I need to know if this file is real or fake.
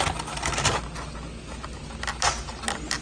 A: real